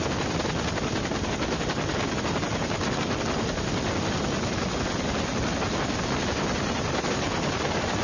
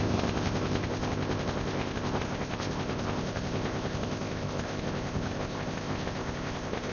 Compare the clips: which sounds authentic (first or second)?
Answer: first